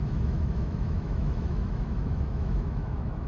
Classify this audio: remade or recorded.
remade